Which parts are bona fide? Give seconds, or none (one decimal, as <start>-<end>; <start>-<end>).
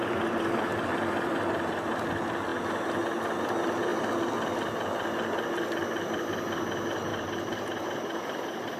0.0-7.1